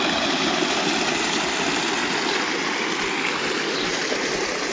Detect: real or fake real